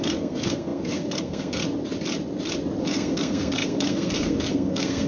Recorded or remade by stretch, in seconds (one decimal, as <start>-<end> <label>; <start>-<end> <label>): 0.0-1.6 remade; 1.6-2.8 recorded; 2.8-5.1 remade